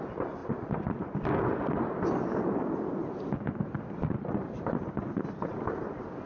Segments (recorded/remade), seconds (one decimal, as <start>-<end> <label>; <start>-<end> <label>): 0.0-3.0 recorded; 3.0-4.1 remade; 4.1-6.3 recorded